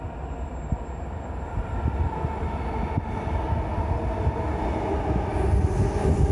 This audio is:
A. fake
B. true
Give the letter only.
B